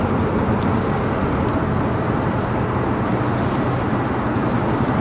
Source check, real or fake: real